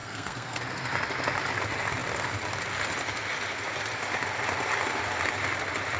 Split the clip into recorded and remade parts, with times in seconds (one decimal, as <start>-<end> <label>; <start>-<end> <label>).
0.0-0.6 remade; 0.6-6.0 recorded